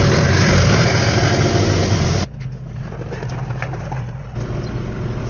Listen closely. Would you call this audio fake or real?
real